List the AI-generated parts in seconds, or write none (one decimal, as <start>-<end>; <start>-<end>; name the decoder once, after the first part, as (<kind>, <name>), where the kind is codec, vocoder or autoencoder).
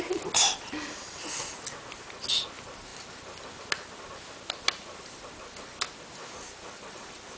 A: none